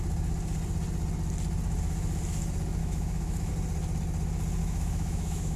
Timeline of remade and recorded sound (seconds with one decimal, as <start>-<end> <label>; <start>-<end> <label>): 0.0-2.8 recorded; 2.8-3.5 remade; 3.5-4.6 recorded; 4.6-5.6 remade